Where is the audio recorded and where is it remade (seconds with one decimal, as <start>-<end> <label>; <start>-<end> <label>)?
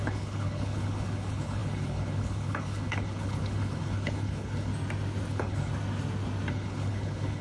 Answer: 0.0-4.7 remade; 4.7-5.3 recorded; 5.3-5.7 remade; 5.7-6.5 recorded; 6.5-7.4 remade